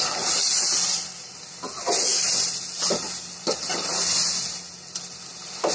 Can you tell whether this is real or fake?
real